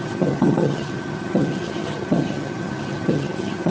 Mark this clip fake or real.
fake